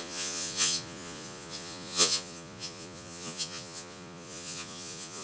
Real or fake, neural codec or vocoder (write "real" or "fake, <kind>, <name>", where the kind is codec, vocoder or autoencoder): fake, vocoder, Vocos